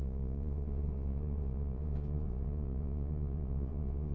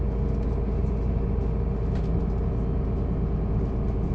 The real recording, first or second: second